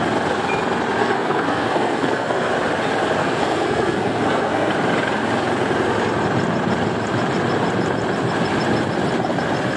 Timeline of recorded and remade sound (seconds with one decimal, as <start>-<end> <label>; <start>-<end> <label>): 0.0-1.0 recorded; 1.0-2.5 remade; 2.5-3.2 recorded; 3.2-4.7 remade; 4.7-9.8 recorded